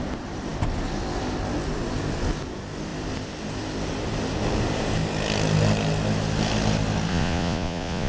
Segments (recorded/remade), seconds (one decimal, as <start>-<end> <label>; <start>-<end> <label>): 0.0-7.1 recorded; 7.1-8.1 remade